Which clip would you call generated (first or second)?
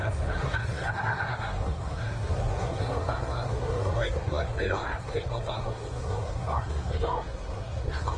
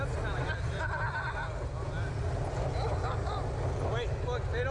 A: first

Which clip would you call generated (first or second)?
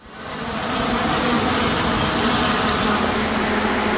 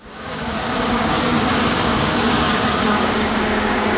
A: second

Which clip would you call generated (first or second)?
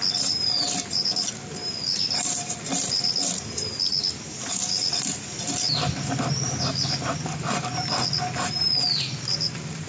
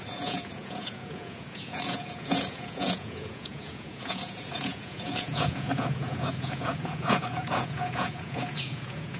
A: second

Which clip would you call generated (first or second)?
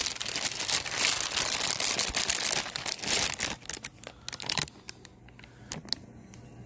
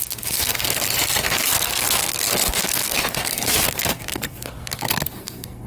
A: second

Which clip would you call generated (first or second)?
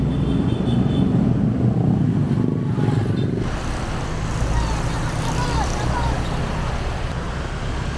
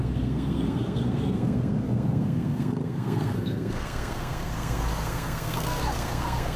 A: second